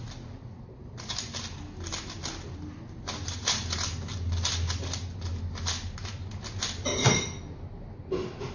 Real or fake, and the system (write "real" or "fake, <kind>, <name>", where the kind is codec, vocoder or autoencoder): real